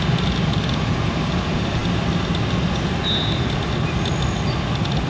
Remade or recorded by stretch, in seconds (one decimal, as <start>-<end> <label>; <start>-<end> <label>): 0.0-5.1 recorded